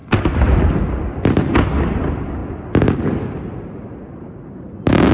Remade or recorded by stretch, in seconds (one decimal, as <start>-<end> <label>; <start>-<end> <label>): 0.0-5.1 recorded